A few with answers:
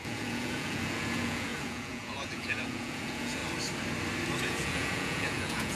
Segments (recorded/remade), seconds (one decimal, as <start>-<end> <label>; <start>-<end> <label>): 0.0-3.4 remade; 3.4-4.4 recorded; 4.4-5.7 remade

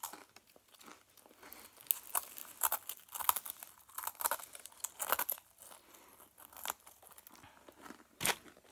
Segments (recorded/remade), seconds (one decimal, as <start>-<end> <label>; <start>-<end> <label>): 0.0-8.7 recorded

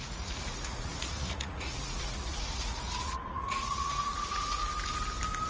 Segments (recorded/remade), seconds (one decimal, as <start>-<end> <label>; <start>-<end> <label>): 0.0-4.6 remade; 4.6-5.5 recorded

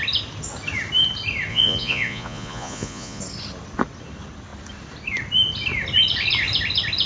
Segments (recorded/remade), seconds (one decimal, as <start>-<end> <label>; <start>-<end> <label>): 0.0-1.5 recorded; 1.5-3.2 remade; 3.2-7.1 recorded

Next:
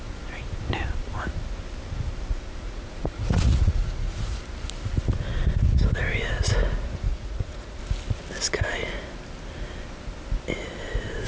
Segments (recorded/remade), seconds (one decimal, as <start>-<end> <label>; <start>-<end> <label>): 0.0-2.3 recorded; 2.3-4.4 remade; 4.4-7.1 recorded; 7.1-7.8 remade; 7.8-11.3 recorded

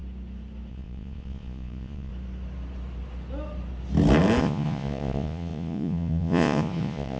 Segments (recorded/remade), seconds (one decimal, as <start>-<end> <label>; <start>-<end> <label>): 0.0-0.7 recorded; 0.7-2.1 remade; 2.1-4.4 recorded; 4.4-7.2 remade

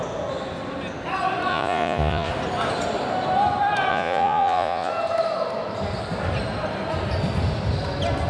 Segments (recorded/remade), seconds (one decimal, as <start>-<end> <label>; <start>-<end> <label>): 0.0-1.5 recorded; 1.5-2.3 remade; 2.3-3.9 recorded; 3.9-4.9 remade; 4.9-8.3 recorded

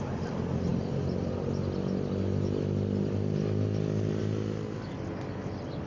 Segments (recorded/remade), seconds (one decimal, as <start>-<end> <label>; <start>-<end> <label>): 0.0-5.9 recorded